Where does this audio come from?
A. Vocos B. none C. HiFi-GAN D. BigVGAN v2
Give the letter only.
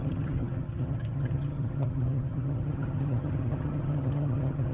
C